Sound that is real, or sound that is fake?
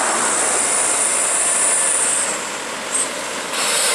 real